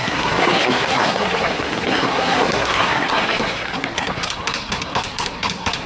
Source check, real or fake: fake